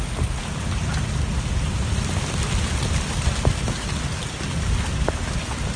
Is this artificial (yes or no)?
no